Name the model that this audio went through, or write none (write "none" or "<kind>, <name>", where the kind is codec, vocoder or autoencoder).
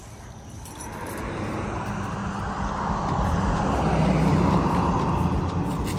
none